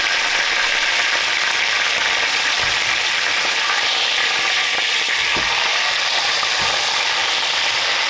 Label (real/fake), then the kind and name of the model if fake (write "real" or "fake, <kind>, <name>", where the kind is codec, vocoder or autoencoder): real